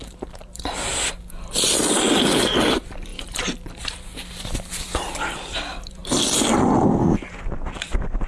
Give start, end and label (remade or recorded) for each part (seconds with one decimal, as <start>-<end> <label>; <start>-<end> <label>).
0.0-0.9 remade; 0.9-1.9 recorded; 1.9-6.0 remade; 6.0-7.3 recorded; 7.3-8.3 remade